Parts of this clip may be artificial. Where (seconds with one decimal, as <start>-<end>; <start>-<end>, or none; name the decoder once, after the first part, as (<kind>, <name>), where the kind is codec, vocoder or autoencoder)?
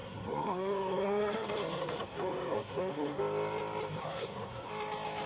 0.0-3.2 (codec, SNAC); 4.0-4.7